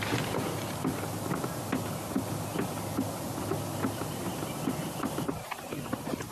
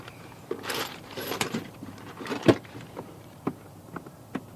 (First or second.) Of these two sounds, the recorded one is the first